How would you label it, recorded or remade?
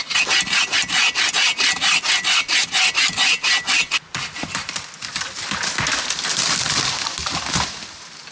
recorded